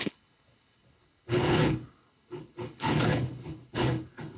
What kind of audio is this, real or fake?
fake